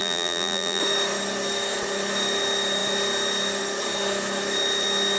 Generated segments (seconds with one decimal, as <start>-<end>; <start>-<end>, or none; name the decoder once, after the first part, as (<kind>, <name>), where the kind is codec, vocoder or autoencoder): 0.0-0.8 (vocoder, BigVGAN v2)